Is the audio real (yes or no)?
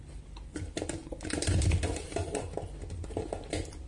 yes